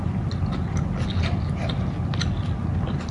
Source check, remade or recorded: recorded